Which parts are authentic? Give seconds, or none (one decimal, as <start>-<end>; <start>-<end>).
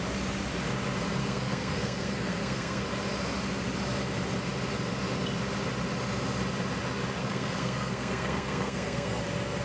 0.0-1.2; 2.8-7.2; 9.2-9.6